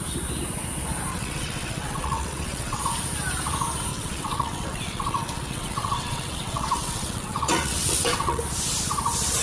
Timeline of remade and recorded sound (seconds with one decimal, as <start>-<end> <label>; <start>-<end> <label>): 0.0-1.1 recorded; 1.1-2.8 remade; 2.8-3.9 recorded; 3.9-8.4 remade; 8.4-9.4 recorded